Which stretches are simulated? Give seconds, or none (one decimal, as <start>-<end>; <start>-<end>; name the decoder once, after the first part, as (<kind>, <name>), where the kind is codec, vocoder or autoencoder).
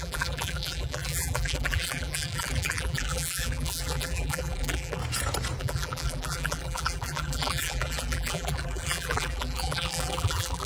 0.0-5.0 (vocoder, BigVGAN v2); 5.6-10.7